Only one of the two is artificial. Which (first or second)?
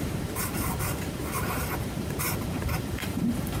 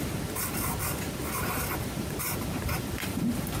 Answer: first